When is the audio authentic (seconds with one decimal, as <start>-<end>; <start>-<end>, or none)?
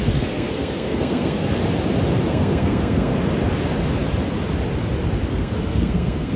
1.6-2.3; 3.1-5.3